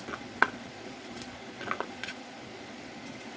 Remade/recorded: remade